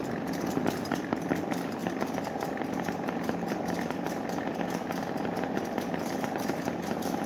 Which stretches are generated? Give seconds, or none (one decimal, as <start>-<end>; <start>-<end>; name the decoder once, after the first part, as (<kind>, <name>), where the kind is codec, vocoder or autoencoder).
none